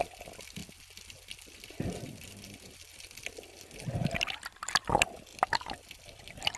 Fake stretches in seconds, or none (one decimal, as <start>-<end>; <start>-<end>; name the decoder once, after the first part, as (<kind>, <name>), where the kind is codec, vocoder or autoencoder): none